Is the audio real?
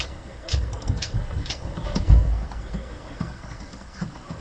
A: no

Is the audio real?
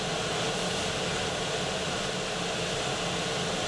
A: yes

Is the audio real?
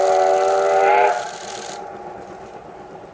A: yes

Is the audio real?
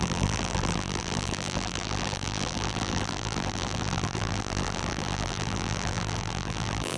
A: no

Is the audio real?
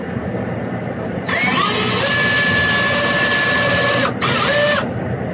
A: yes